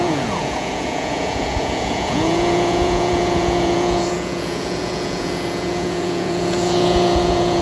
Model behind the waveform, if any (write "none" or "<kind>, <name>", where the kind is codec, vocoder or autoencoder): vocoder, Vocos